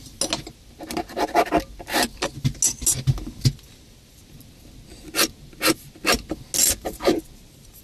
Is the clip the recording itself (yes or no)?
yes